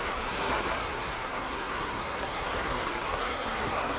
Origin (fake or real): fake